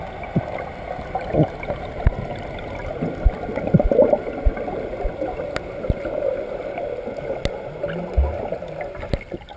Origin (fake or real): real